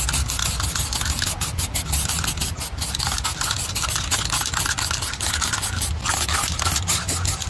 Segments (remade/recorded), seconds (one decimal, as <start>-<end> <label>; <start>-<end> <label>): 0.0-7.5 recorded